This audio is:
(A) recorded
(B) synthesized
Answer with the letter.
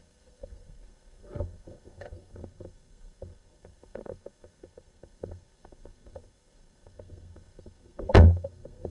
B